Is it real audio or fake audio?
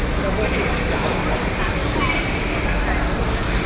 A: real